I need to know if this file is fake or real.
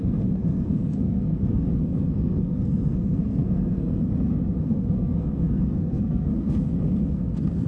fake